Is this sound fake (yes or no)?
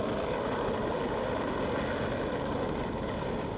no